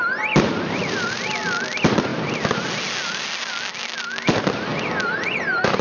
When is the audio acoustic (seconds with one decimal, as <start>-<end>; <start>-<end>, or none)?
0.0-5.8